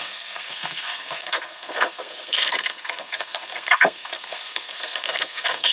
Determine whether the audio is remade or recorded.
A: remade